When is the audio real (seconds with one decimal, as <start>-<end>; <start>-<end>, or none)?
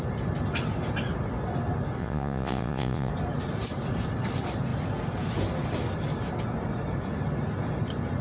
0.0-2.0; 3.1-8.2